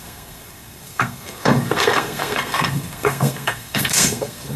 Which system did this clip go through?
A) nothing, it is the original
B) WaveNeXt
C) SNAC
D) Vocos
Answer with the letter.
C